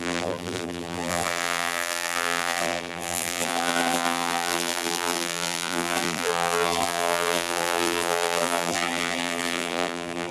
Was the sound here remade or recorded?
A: remade